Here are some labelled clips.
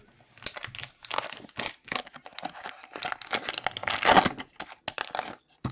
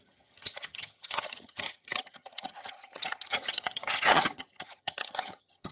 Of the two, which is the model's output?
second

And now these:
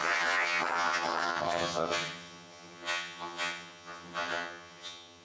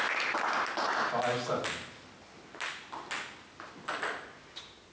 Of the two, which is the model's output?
first